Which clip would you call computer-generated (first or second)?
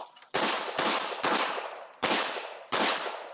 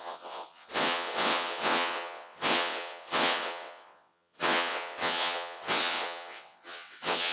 second